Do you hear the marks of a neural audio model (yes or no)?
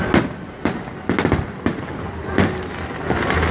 no